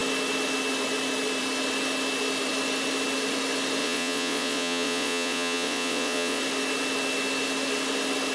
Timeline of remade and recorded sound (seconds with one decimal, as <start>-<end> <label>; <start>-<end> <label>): 0.0-3.8 recorded; 3.8-6.4 remade; 6.4-8.3 recorded